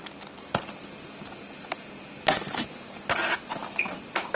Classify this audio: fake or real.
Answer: real